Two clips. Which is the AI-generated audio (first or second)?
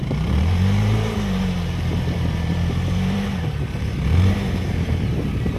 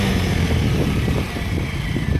first